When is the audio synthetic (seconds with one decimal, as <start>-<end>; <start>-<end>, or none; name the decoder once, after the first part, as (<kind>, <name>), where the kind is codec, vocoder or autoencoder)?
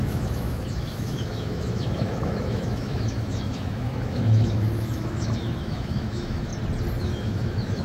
0.0-6.5 (autoencoder, DAC-VAE); 7.0-7.8